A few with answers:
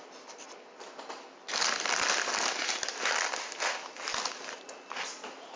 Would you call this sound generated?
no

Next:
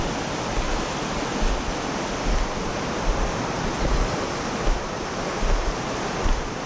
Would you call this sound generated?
no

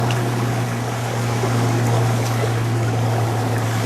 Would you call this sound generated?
yes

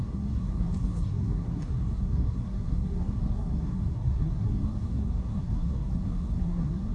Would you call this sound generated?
yes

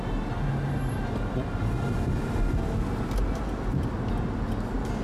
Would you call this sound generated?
no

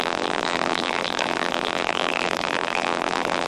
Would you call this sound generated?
yes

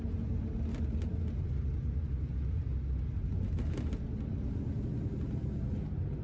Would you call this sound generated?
no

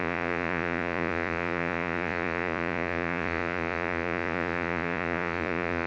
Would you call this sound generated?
yes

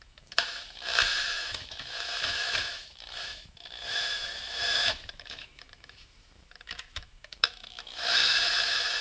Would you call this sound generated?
yes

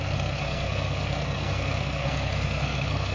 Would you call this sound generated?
yes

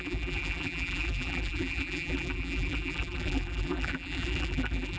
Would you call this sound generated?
yes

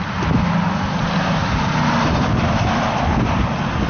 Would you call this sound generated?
no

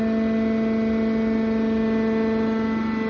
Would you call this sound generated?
no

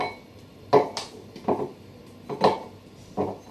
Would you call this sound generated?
no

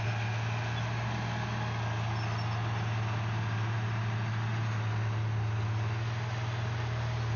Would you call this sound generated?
no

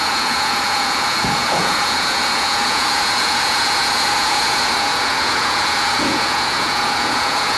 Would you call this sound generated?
yes